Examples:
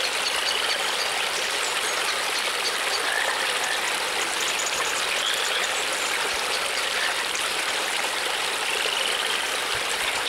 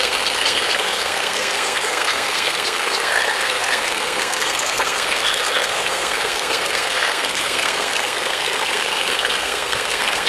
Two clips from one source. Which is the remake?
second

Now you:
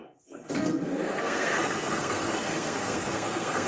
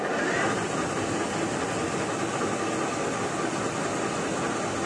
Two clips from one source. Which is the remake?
first